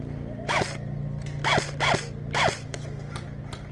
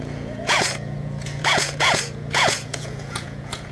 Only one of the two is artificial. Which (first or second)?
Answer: second